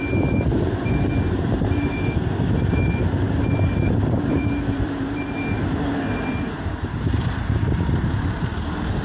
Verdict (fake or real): fake